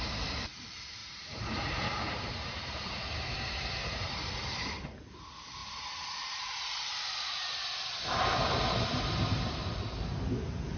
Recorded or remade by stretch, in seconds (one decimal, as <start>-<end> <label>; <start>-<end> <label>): 0.0-1.0 recorded; 1.0-4.7 remade; 4.7-5.6 recorded; 5.6-7.6 remade; 7.6-10.8 recorded